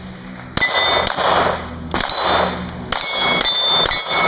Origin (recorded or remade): recorded